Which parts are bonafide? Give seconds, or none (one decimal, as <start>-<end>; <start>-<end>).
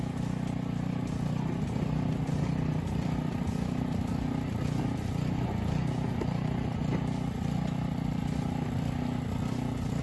0.0-10.0